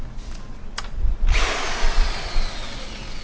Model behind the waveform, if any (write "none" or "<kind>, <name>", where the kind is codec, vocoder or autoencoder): none